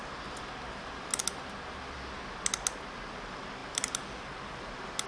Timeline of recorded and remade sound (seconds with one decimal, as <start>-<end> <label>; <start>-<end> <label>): 0.0-5.1 recorded